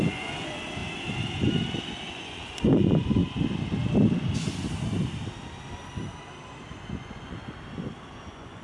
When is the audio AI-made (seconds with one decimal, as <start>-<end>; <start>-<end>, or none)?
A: 0.0-0.8; 2.1-3.2; 6.7-7.4; 8.1-8.6